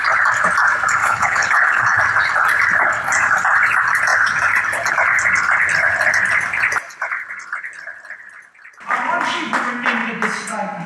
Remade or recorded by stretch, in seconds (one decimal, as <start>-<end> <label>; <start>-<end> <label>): 0.0-1.0 recorded; 1.0-2.0 remade; 2.0-10.9 recorded